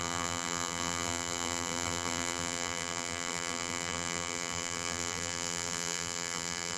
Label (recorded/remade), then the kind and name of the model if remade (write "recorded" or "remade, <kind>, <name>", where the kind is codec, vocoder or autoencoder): remade, vocoder, BigVGAN v2